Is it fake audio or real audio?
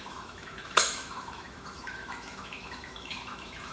fake